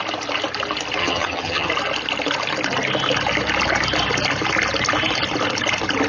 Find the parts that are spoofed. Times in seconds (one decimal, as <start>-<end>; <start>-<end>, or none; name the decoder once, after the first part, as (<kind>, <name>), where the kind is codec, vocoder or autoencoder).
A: 1.0-1.7 (vocoder, HiFi-GAN)